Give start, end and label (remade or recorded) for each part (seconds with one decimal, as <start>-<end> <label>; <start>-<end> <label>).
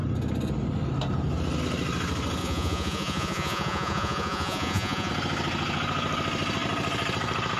0.0-2.4 recorded; 2.4-5.1 remade; 5.1-7.6 recorded